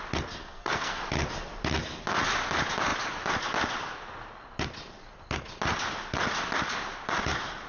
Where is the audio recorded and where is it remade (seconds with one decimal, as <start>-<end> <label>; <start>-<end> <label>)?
0.0-0.4 recorded; 0.4-1.0 remade; 1.0-7.7 recorded